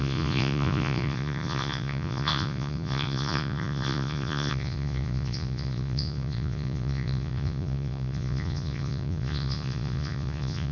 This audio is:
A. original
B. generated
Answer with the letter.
B